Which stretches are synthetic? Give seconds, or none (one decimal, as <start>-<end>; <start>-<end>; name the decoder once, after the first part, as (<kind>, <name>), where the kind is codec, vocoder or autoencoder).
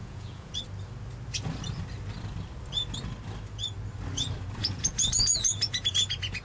0.0-0.6 (vocoder, Vocos); 4.6-6.4